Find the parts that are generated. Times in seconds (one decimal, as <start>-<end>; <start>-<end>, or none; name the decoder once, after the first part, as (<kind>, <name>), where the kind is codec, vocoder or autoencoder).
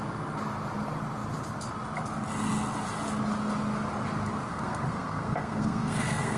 4.5-6.4 (codec, SNAC)